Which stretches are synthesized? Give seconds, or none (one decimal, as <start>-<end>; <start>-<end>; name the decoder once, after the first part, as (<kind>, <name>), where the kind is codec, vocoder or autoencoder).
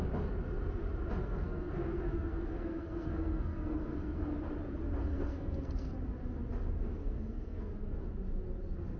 1.2-4.2 (codec, SNAC); 5.1-5.9; 6.9-7.7